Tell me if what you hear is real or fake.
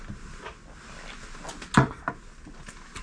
real